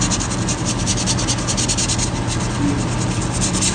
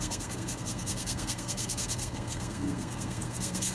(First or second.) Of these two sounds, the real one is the first